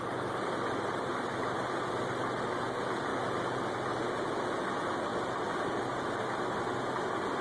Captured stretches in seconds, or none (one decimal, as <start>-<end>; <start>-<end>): 0.0-7.4

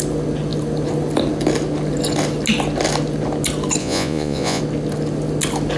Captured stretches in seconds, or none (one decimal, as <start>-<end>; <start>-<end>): 0.0-3.8; 4.6-5.8

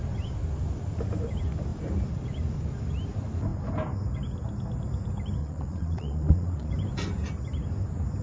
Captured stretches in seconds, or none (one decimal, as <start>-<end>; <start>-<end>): 0.0-5.4; 6.7-8.2

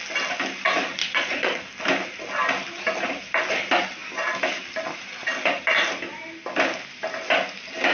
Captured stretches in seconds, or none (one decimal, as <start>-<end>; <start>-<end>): 0.0-1.0; 1.6-7.9